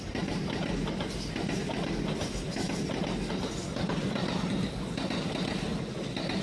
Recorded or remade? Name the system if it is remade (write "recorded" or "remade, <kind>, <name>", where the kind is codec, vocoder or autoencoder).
recorded